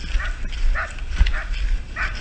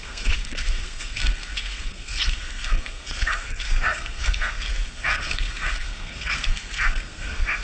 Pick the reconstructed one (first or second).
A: second